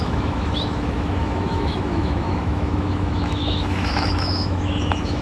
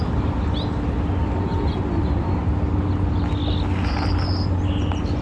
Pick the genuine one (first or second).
second